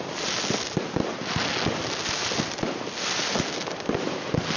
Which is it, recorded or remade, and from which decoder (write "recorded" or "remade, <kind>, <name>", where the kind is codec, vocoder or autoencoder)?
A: recorded